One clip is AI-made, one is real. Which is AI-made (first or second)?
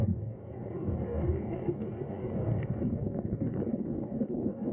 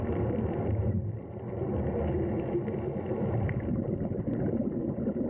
first